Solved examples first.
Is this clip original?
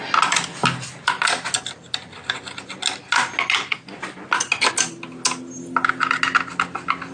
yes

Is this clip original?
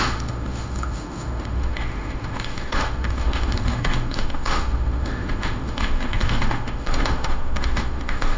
no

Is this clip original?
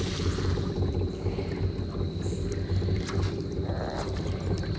yes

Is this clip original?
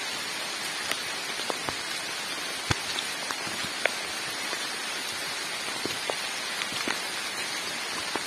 yes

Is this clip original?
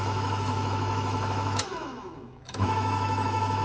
no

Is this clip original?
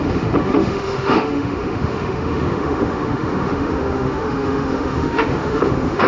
no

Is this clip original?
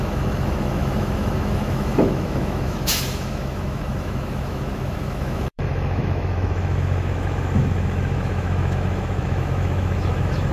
no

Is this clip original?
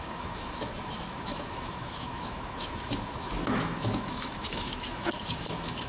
no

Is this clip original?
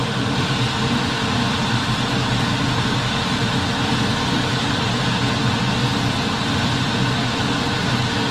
yes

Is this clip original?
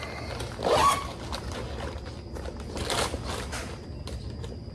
yes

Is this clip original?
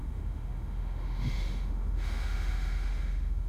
no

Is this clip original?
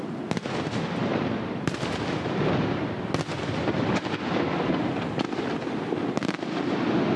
yes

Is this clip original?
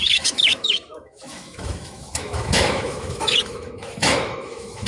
no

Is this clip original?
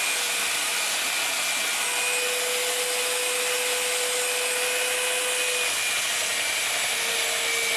yes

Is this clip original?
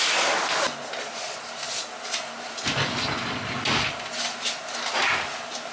yes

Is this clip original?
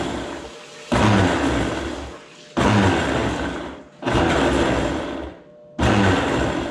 yes